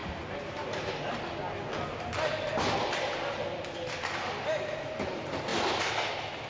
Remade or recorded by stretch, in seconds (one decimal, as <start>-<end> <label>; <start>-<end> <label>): 0.0-6.5 recorded